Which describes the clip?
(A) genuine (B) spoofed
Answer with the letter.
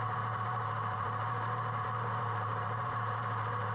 B